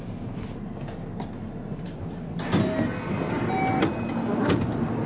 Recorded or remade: recorded